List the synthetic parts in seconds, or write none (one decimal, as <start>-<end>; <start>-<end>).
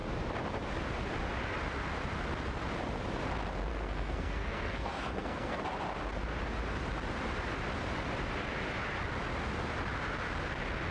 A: 3.7-5.6